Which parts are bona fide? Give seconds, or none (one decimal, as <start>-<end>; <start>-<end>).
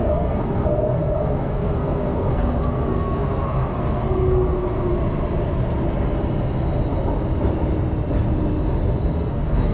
4.9-9.0